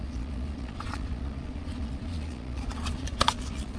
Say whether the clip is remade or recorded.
remade